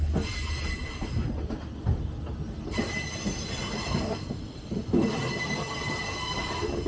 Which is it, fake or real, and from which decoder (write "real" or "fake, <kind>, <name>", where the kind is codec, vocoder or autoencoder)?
real